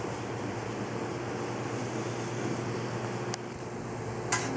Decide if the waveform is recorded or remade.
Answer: recorded